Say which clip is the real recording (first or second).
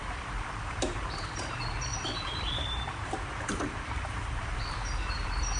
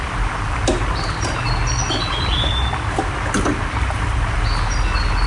second